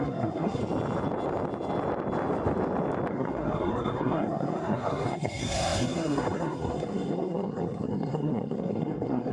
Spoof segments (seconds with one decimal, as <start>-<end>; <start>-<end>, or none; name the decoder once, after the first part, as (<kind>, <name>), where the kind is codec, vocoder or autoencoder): 0.0-0.6 (codec, SNAC); 3.1-9.3